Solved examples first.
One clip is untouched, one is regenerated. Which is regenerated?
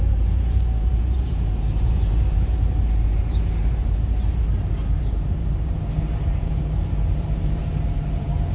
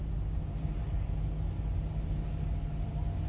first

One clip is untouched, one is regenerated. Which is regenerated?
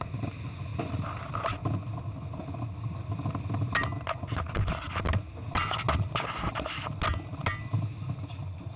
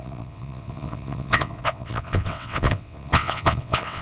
second